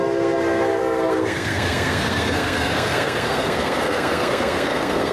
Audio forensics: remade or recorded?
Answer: remade